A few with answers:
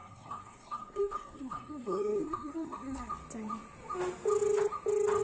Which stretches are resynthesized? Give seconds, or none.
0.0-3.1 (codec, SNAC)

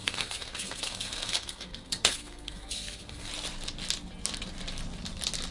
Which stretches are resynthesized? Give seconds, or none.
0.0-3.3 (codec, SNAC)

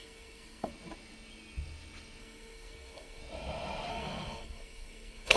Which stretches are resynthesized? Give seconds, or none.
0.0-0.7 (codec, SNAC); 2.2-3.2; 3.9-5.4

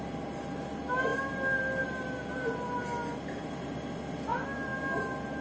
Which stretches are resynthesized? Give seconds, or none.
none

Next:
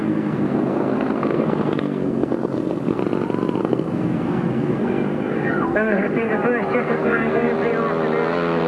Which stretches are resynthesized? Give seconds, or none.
0.0-3.0 (codec, SNAC); 3.6-6.3; 6.8-7.5